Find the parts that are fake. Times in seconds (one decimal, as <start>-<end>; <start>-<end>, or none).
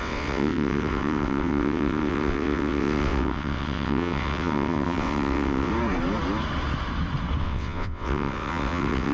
0.0-5.7; 7.4-9.1